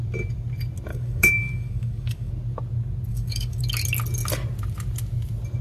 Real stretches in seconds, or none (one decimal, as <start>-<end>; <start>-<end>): 0.0-0.9; 2.3-3.1; 3.6-5.6